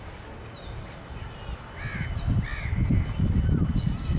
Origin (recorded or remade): recorded